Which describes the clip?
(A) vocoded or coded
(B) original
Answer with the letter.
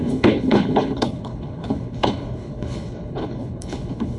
A